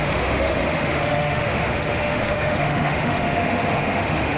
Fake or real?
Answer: fake